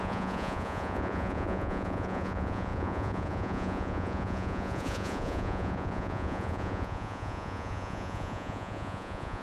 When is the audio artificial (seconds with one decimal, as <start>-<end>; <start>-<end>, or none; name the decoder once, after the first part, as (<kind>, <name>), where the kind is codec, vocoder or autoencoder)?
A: 0.0-9.4 (vocoder, Vocos)